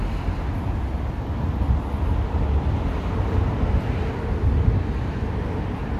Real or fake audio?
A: real